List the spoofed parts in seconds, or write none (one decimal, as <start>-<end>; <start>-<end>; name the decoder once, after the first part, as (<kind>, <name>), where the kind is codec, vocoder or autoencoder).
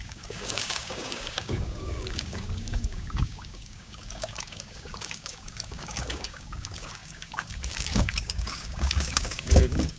0.0-10.0 (codec, DAC)